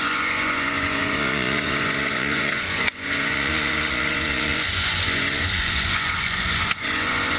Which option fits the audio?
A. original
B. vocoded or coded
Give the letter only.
B